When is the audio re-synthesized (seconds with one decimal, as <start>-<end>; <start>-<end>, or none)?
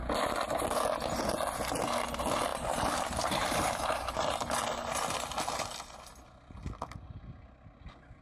2.5-4.2